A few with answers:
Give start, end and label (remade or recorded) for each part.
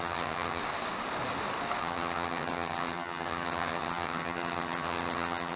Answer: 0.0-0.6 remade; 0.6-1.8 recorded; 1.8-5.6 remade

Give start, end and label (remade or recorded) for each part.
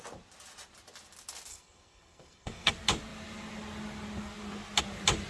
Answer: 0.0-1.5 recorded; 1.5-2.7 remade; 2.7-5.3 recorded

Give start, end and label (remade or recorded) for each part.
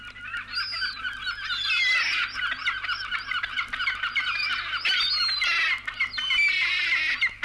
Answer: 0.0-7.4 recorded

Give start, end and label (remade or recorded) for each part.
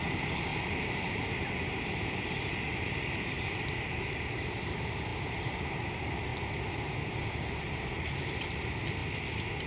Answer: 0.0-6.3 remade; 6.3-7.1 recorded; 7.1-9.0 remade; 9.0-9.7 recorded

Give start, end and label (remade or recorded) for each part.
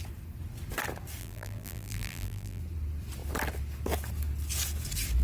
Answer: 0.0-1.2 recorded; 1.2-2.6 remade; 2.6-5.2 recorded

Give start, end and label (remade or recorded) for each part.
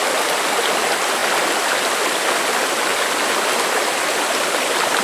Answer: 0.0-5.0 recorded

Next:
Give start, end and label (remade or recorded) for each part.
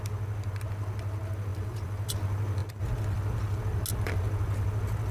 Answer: 0.0-1.5 recorded; 1.5-2.1 remade; 2.1-5.1 recorded